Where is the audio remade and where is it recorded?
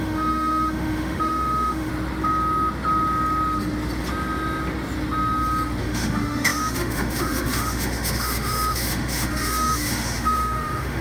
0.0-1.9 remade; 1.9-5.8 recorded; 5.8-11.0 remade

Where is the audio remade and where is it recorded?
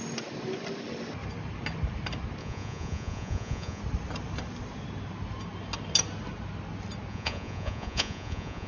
0.0-2.4 recorded; 2.4-3.8 remade; 3.8-7.1 recorded; 7.1-8.7 remade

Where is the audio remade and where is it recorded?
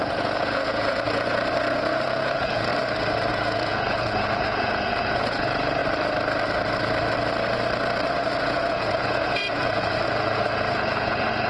0.0-2.7 remade; 2.7-3.3 recorded; 3.3-5.8 remade; 5.8-8.4 recorded; 8.4-11.5 remade